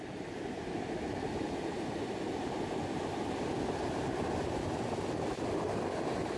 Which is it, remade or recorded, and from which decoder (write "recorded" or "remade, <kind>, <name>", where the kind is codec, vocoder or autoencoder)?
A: recorded